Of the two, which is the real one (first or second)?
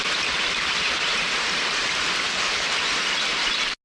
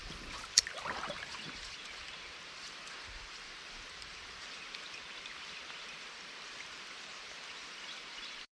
first